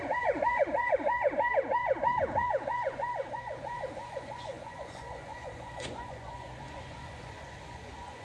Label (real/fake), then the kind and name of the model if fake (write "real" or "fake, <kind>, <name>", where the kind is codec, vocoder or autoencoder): fake, vocoder, Vocos